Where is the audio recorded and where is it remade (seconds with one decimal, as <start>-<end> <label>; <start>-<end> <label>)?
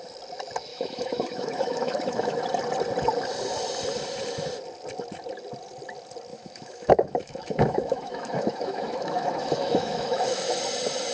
0.0-0.7 recorded; 0.7-2.4 remade; 2.4-6.3 recorded; 6.3-10.6 remade; 10.6-11.1 recorded